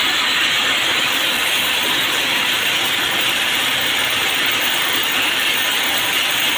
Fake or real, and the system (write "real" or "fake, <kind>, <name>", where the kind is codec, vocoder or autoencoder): real